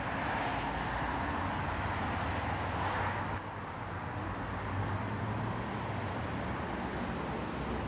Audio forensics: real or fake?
real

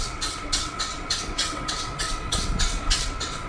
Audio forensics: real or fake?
fake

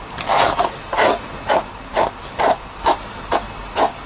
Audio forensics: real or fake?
real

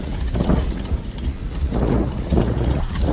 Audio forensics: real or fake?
fake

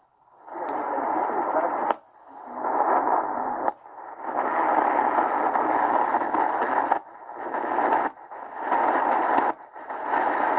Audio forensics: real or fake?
real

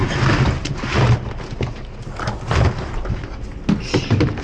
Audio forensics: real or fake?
real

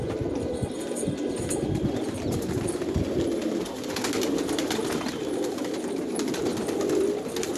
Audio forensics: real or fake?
real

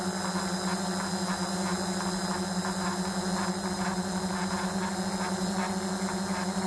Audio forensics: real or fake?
real